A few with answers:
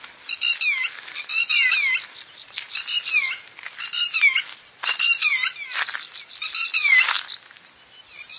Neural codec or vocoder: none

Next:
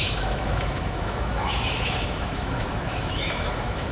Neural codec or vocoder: autoencoder, DAC-VAE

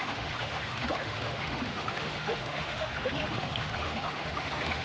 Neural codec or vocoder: autoencoder, DAC-VAE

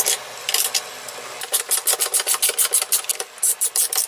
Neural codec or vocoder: none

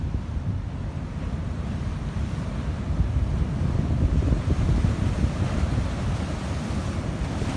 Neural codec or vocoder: none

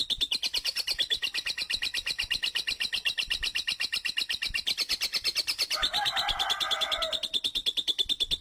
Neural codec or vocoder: none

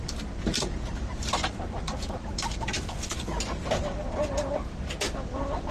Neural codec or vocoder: none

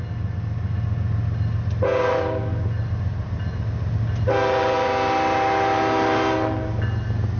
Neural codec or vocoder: none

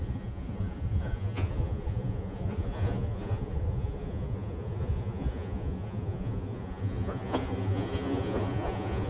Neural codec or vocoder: vocoder, Vocos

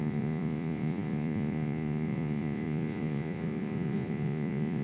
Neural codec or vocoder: vocoder, Vocos